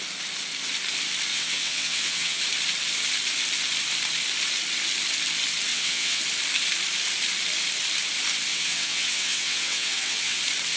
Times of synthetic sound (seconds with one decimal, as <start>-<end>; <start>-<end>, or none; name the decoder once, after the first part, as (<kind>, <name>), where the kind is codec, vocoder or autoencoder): 1.3-2.4 (vocoder, WaveNeXt); 5.7-6.2; 8.5-10.4